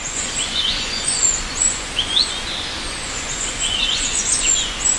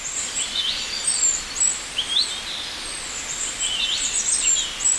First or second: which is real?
second